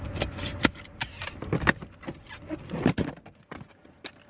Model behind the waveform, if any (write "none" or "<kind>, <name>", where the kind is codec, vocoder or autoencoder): none